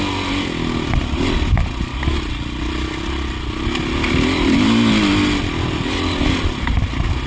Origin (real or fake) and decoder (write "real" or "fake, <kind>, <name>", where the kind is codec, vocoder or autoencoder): real